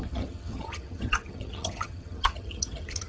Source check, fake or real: fake